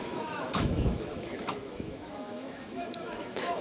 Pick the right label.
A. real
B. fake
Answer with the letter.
B